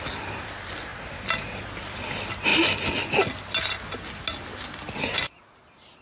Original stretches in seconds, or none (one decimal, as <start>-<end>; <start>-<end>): 0.0-6.0